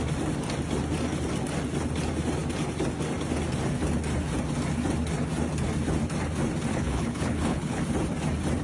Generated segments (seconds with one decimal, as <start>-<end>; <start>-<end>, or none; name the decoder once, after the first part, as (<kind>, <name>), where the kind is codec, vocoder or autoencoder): 6.7-7.8 (codec, HILCodec)